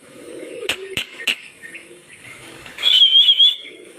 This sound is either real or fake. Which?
fake